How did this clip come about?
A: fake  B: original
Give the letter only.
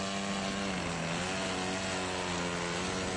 B